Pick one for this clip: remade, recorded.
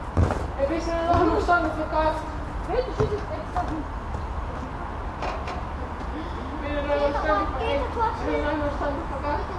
recorded